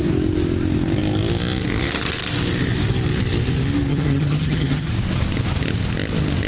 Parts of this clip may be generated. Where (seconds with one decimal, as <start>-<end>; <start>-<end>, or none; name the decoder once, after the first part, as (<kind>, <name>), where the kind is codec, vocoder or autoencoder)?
3.9-4.9 (vocoder, HiFi-GAN)